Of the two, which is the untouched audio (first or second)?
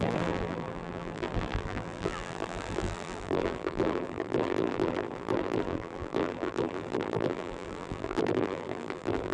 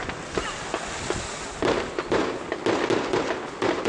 second